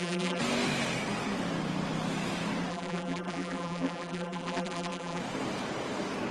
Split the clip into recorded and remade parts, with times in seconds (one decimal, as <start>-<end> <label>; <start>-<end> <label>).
0.0-0.4 remade; 0.4-2.7 recorded; 2.7-5.2 remade; 5.2-6.3 recorded